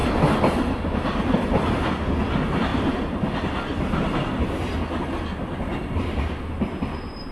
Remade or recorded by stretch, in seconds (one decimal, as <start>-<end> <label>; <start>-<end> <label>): 0.0-7.3 recorded